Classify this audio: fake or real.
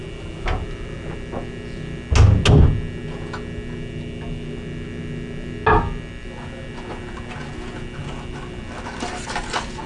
real